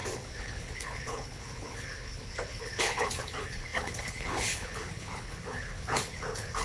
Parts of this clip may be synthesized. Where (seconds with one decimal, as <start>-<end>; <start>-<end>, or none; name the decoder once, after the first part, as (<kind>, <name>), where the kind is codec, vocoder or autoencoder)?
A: 0.0-6.6 (codec, HILCodec)